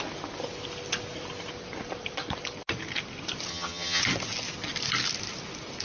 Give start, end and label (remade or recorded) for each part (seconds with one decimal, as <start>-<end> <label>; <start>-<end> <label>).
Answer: 0.0-3.5 recorded; 3.5-4.0 remade; 4.0-5.8 recorded